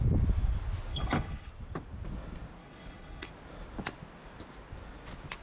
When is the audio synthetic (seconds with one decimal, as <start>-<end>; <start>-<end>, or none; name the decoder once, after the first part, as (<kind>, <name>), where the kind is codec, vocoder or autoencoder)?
0.9-1.5 (codec, HILCodec); 2.6-3.3